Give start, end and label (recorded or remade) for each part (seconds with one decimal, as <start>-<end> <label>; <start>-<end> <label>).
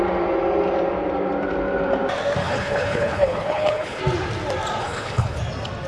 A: 0.0-2.4 recorded; 2.4-4.0 remade; 4.0-4.8 recorded; 4.8-5.4 remade; 5.4-5.9 recorded